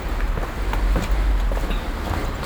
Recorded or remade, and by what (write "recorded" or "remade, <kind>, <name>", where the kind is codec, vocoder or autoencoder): recorded